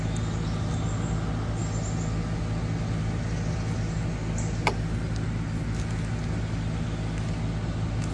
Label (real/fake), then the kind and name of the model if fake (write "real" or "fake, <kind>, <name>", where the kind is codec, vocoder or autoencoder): real